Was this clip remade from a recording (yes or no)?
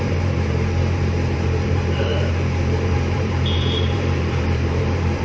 yes